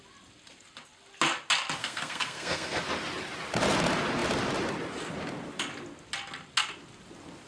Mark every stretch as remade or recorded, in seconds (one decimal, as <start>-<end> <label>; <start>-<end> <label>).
0.0-1.8 recorded; 1.8-2.8 remade; 2.8-7.5 recorded